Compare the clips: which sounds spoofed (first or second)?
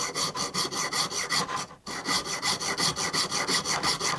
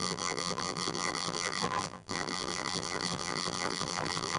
second